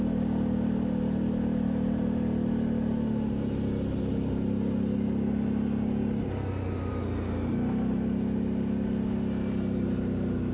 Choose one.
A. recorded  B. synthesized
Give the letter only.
A